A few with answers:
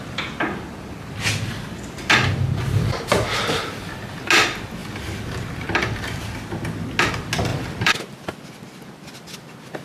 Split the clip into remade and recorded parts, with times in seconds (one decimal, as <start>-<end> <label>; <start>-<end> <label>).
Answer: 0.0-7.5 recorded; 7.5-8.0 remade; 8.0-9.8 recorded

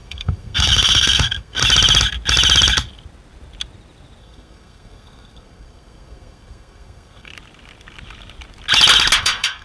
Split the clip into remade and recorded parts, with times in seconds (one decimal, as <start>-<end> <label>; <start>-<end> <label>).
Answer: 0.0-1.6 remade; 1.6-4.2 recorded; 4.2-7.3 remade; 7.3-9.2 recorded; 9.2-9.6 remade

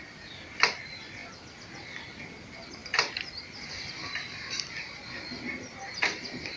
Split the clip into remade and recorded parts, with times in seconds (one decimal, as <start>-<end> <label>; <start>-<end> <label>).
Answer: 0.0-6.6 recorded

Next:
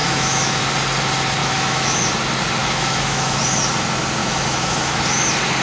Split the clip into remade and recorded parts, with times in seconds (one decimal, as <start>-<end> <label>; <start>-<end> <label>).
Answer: 0.0-0.6 remade; 0.6-1.4 recorded; 1.4-2.0 remade; 2.0-2.6 recorded; 2.6-3.4 remade; 3.4-4.2 recorded; 4.2-5.0 remade; 5.0-5.6 recorded